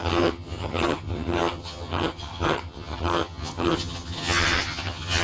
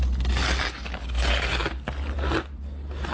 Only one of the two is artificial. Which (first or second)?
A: first